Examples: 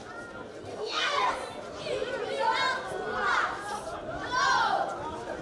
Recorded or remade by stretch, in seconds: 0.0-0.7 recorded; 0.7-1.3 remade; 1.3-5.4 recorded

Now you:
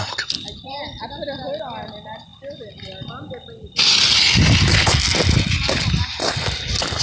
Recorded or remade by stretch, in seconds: 0.0-7.0 recorded